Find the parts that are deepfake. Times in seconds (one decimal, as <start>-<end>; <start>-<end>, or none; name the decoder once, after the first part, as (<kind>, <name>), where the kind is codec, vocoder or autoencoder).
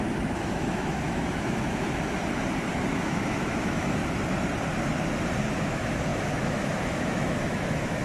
0.0-2.2 (autoencoder, DAC-VAE); 2.9-4.0; 5.5-8.0